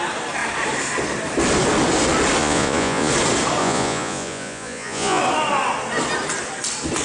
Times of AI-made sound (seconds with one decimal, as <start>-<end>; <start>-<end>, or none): 2.4-3.1; 3.6-5.2